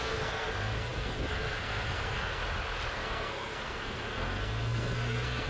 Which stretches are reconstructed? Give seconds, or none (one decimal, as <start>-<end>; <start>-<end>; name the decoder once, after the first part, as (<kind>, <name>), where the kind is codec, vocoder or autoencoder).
0.0-2.4 (codec, SNAC); 2.9-5.5